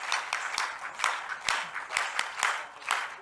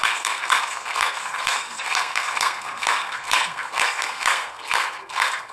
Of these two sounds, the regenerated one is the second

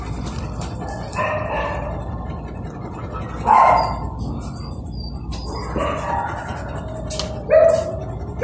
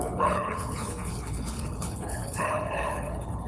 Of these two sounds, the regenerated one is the second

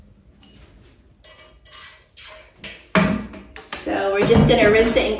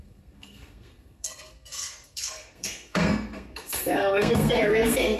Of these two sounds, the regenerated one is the second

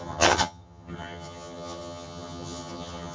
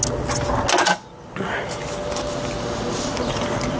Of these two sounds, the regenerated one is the first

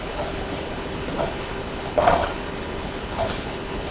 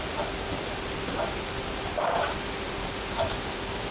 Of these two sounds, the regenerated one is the first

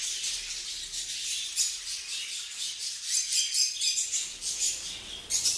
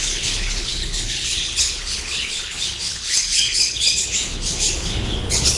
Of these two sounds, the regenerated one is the second